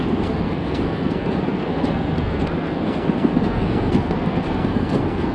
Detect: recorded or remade remade